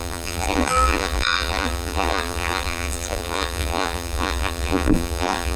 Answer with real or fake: fake